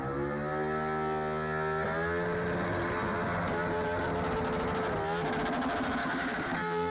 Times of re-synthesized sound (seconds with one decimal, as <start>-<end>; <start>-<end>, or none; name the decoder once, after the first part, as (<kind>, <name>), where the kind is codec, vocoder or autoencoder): 6.0-6.9 (codec, DAC)